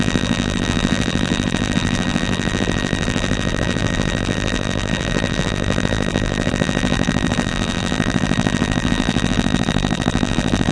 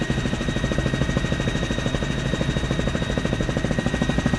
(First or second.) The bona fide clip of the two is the second